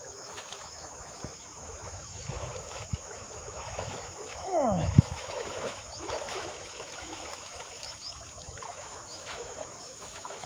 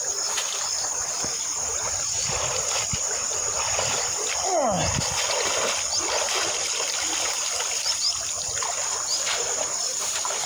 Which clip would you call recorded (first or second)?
second